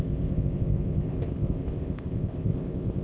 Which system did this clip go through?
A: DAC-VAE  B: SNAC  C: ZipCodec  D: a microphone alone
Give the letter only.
C